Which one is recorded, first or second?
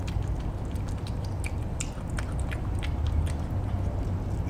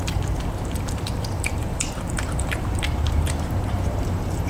first